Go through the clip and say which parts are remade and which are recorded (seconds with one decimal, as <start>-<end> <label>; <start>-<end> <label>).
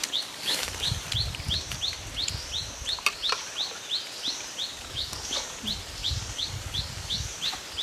0.0-1.0 remade; 1.0-4.7 recorded; 4.7-5.6 remade; 5.6-6.0 recorded; 6.0-7.3 remade; 7.3-7.8 recorded